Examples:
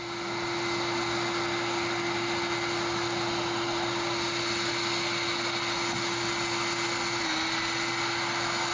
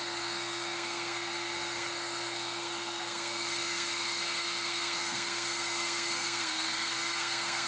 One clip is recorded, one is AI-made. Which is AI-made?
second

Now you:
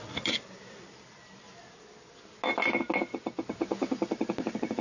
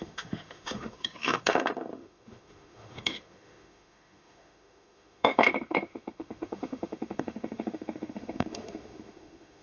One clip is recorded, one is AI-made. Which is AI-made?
second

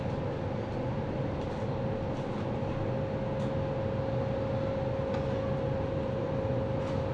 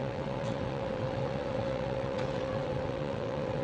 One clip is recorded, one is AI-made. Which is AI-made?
second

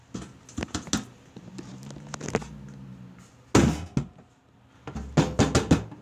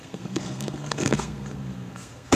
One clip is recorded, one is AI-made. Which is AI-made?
second